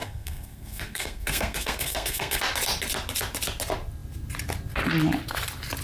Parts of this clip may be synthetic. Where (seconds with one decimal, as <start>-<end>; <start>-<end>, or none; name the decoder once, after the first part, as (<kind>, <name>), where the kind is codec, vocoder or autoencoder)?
0.0-2.4 (codec, SNAC)